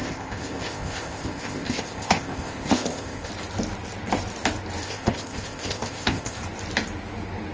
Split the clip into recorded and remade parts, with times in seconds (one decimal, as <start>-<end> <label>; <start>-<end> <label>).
0.0-3.3 remade; 3.3-4.8 recorded; 4.8-6.4 remade; 6.4-7.5 recorded

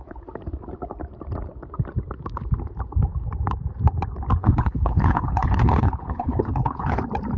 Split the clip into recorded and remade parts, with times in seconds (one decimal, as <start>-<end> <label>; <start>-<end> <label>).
0.0-4.4 recorded; 4.4-7.0 remade; 7.0-7.4 recorded

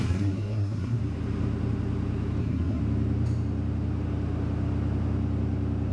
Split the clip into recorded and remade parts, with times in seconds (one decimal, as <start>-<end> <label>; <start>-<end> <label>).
0.0-1.0 remade; 1.0-2.4 recorded; 2.4-2.8 remade; 2.8-5.9 recorded

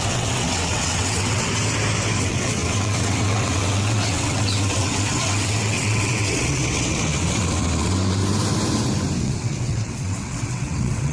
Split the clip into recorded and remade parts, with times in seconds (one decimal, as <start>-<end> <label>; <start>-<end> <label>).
0.0-1.5 remade; 1.5-2.2 recorded; 2.2-8.2 remade; 8.2-9.2 recorded; 9.2-11.1 remade

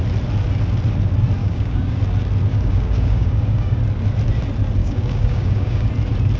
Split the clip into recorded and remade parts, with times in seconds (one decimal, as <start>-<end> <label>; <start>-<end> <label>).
0.0-1.4 recorded; 1.4-2.0 remade; 2.0-2.5 recorded; 2.5-3.8 remade; 3.8-4.8 recorded; 4.8-5.9 remade; 5.9-6.4 recorded

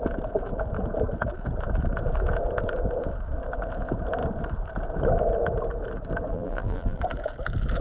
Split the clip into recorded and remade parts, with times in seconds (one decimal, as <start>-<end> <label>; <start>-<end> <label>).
0.0-6.3 recorded; 6.3-7.0 remade; 7.0-7.8 recorded

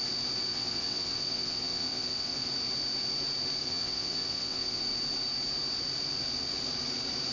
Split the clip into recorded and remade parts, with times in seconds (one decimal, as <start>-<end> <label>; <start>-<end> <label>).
0.0-0.5 recorded; 0.5-2.5 remade; 2.5-3.6 recorded; 3.6-4.8 remade; 4.8-7.3 recorded